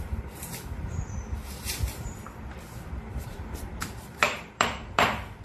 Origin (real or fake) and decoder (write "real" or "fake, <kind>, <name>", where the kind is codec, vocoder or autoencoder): fake, vocoder, BigVGAN v2